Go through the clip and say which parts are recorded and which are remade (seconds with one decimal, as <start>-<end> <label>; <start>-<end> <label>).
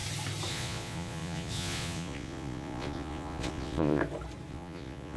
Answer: 0.0-0.5 recorded; 0.5-4.0 remade; 4.0-4.5 recorded; 4.5-5.2 remade